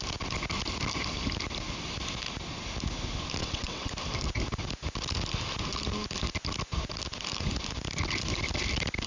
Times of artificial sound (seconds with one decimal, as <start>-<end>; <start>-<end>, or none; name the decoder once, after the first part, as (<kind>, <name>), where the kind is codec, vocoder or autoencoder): 3.4-3.9 (vocoder, WaveNeXt)